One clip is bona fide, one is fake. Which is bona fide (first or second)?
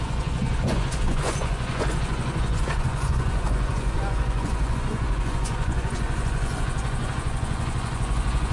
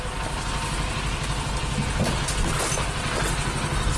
second